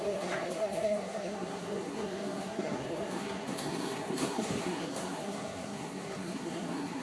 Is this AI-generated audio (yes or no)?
yes